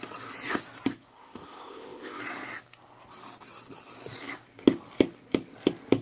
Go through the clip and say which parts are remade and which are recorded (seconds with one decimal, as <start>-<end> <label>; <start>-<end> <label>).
0.0-1.1 recorded; 1.1-2.2 remade; 2.2-6.0 recorded